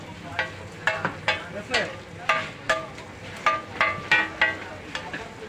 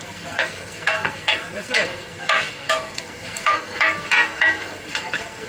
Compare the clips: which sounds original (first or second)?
first